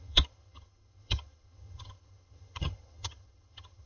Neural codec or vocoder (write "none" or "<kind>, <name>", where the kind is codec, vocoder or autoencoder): vocoder, HiFi-GAN